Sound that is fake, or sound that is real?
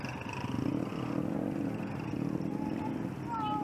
real